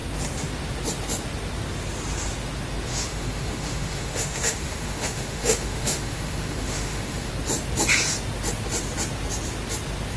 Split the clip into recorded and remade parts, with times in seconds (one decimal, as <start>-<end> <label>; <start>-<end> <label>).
0.0-2.9 recorded; 2.9-7.3 remade; 7.3-10.2 recorded